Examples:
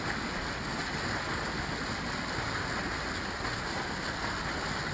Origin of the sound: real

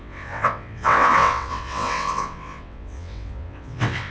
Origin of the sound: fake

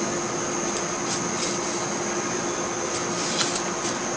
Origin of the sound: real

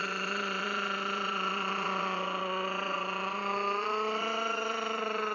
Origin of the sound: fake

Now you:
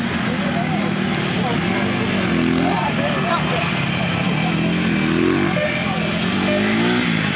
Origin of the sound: real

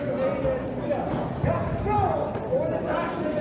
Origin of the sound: real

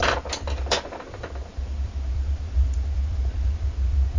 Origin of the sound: fake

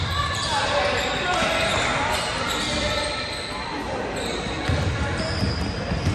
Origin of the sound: real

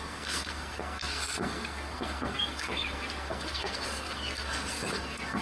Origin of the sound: fake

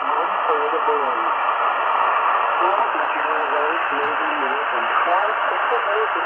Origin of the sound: real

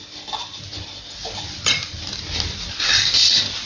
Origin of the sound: real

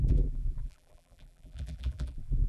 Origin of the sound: fake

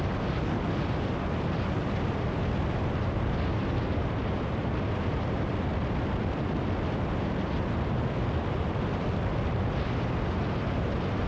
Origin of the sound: fake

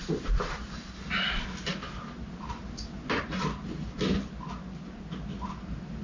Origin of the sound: real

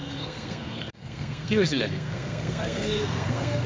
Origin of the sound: fake